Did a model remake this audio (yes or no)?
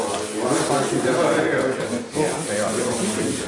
no